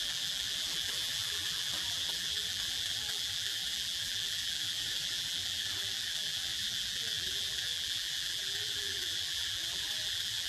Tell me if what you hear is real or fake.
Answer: fake